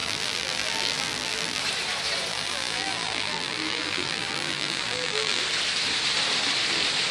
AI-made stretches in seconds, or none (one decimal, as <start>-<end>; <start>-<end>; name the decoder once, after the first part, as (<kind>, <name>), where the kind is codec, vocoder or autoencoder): 0.0-1.6 (vocoder, BigVGAN v2); 2.3-5.4